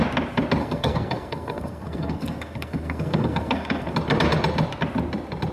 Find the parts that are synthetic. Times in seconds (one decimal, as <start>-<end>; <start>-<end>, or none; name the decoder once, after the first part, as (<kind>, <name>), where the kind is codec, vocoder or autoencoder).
0.6-3.9 (codec, SNAC)